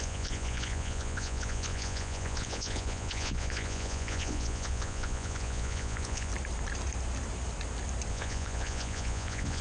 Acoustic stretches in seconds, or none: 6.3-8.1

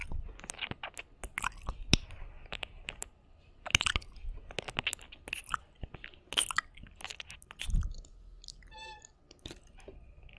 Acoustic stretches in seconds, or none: 0.0-10.4

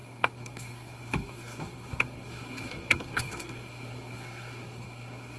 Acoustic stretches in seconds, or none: none

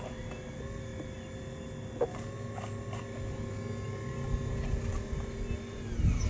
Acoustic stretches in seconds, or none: 0.0-6.3

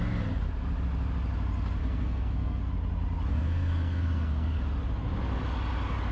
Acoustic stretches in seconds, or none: 0.0-1.8; 2.7-3.3; 4.6-6.1